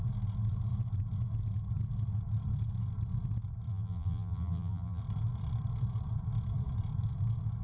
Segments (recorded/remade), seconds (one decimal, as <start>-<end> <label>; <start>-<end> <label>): 0.0-3.7 recorded; 3.7-5.0 remade; 5.0-7.6 recorded